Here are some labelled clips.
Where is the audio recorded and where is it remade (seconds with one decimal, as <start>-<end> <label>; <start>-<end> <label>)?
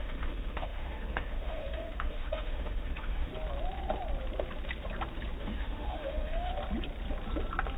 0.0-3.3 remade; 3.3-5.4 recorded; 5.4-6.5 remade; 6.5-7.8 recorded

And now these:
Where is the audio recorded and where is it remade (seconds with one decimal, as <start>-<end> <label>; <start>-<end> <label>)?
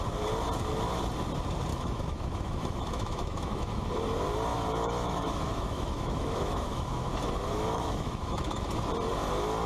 0.0-1.7 recorded; 1.7-3.9 remade; 3.9-4.5 recorded; 4.5-8.7 remade; 8.7-9.7 recorded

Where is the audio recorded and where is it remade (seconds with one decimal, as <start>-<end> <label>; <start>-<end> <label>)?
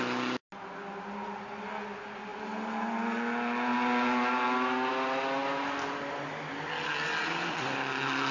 0.0-8.3 recorded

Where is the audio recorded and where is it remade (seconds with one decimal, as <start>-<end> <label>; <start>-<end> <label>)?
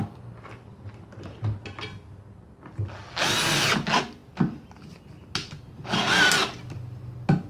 0.0-7.5 recorded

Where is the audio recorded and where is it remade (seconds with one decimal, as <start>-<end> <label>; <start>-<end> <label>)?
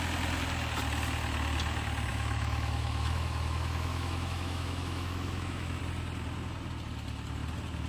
0.0-2.1 recorded; 2.1-5.8 remade; 5.8-7.9 recorded